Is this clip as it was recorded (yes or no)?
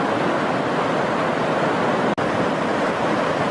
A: yes